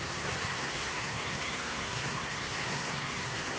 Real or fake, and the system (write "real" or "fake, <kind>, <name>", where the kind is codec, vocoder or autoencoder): fake, codec, SNAC